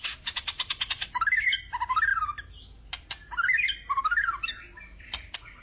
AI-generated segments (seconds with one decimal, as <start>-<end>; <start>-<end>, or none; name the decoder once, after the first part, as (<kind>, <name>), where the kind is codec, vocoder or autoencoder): none